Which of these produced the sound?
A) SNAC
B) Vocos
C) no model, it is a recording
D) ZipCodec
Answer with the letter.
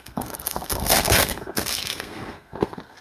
A